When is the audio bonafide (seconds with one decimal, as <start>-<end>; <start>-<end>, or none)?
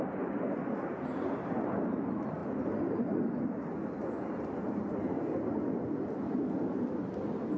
0.0-7.6